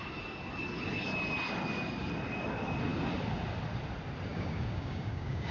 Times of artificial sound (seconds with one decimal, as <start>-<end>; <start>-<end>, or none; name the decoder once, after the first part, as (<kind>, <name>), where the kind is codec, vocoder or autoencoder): 4.3-5.5 (codec, DAC)